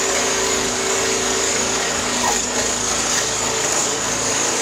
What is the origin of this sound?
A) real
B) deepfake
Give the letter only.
B